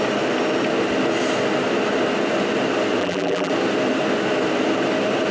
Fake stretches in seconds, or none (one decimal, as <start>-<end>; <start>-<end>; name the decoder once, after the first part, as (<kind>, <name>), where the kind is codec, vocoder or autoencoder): 3.0-3.5 (vocoder, BigVGAN v2)